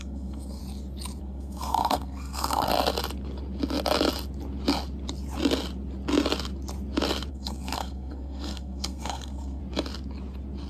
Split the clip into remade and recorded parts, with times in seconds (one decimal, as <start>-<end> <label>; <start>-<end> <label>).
0.0-0.6 remade; 0.6-1.2 recorded; 1.2-2.7 remade; 2.7-7.3 recorded; 7.3-9.6 remade; 9.6-10.7 recorded